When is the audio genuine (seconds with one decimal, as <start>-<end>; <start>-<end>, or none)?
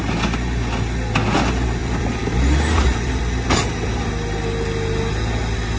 0.0-1.8; 4.1-5.8